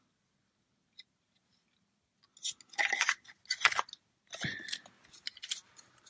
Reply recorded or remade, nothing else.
recorded